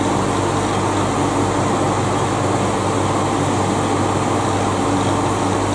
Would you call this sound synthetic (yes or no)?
no